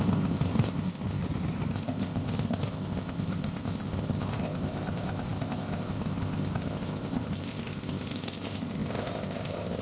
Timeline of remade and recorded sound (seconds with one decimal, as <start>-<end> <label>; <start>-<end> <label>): 0.0-1.2 remade; 1.2-1.7 recorded; 1.7-9.8 remade